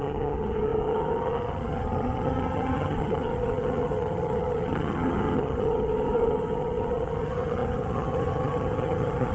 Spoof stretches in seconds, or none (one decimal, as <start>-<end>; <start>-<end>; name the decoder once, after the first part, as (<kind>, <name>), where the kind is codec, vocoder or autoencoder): 0.0-9.3 (vocoder, HiFi-GAN)

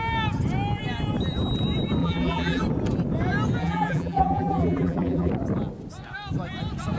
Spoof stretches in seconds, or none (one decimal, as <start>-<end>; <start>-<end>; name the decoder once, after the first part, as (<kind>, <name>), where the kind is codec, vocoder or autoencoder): 2.0-2.6 (vocoder, BigVGAN v2); 3.6-5.3

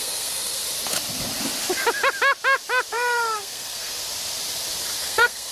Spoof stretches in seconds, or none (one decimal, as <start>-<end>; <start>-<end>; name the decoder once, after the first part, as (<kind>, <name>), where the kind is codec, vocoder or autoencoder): 0.0-0.6 (codec, SNAC); 2.9-4.0; 5.0-5.5

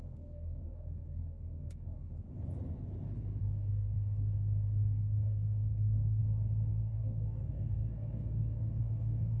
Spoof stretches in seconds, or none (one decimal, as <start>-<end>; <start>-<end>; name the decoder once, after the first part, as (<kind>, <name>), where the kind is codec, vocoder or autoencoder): 0.0-2.1 (codec, DAC); 3.4-6.2; 6.7-9.4

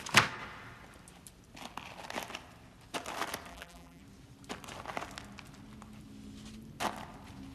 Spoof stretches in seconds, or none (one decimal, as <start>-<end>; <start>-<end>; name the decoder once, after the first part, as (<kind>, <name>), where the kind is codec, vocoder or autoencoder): 3.5-4.0 (vocoder, BigVGAN v2)

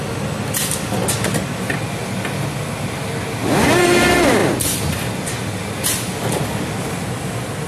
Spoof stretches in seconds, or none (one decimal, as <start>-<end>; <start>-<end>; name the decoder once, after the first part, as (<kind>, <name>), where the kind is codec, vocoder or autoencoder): none

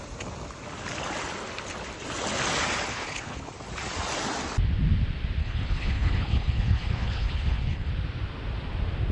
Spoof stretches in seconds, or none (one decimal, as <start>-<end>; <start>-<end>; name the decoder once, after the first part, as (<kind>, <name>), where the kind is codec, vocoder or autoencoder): 2.9-3.5 (codec, HILCodec); 5.4-7.9